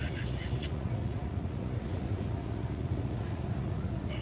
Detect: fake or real fake